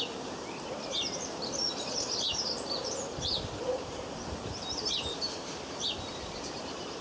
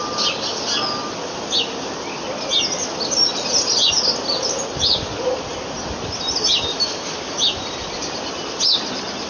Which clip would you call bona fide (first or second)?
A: second